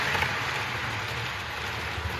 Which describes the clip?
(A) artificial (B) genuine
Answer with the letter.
B